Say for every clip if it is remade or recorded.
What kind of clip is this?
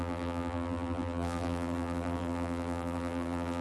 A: remade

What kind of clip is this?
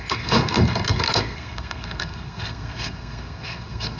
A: remade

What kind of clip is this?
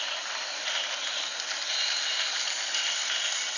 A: recorded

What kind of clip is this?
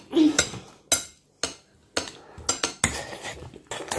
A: recorded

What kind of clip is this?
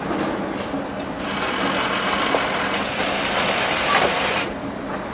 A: recorded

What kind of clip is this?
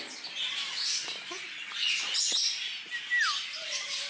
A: recorded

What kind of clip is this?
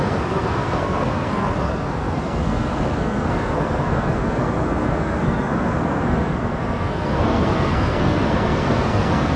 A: remade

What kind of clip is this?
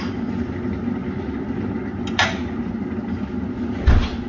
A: recorded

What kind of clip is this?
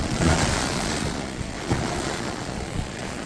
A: remade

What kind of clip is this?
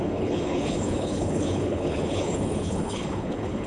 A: remade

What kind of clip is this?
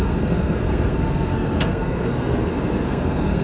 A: remade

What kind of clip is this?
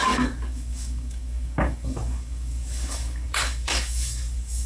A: remade